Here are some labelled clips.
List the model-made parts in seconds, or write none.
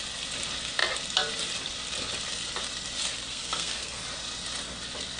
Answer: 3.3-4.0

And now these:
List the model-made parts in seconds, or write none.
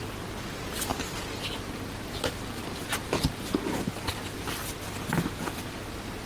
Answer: none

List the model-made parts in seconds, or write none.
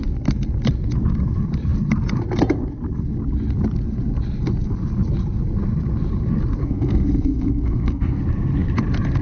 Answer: 6.6-8.2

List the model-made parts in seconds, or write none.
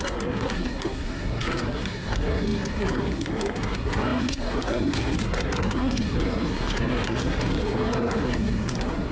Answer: 0.0-9.1